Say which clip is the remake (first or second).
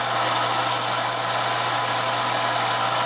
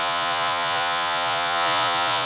second